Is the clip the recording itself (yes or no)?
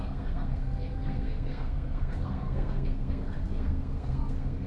no